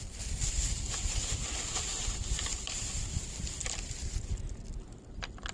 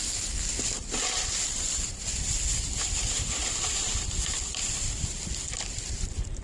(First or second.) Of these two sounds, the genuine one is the first